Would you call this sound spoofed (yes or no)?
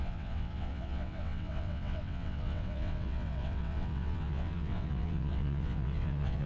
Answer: yes